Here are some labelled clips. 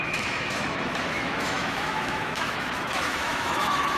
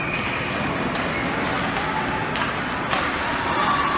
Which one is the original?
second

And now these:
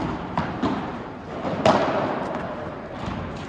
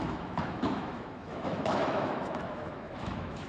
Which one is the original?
first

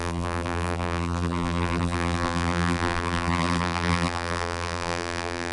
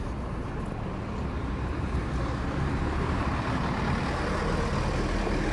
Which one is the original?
second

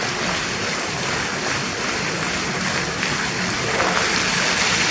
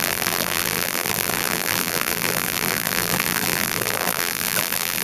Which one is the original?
first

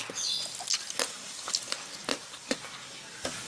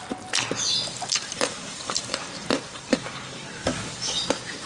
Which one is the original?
first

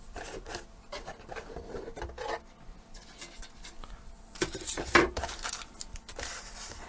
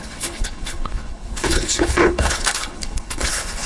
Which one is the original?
first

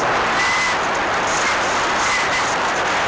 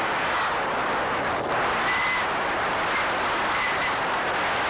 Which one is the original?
first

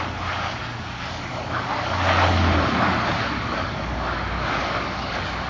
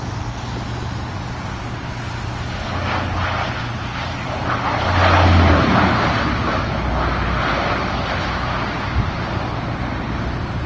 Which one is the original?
second